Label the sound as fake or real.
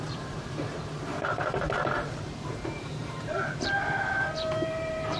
fake